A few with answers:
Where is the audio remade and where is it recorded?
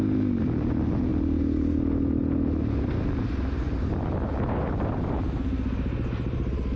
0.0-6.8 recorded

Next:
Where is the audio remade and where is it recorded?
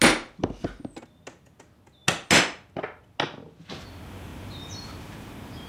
0.0-4.3 recorded; 4.3-5.3 remade; 5.3-5.7 recorded